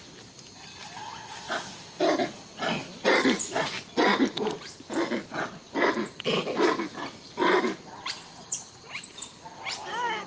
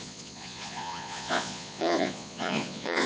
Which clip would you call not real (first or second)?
second